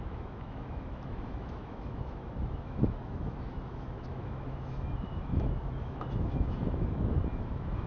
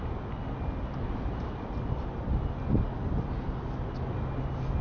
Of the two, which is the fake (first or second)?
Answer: first